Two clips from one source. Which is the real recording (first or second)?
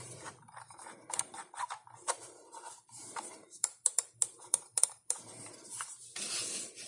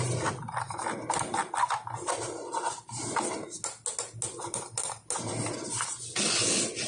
second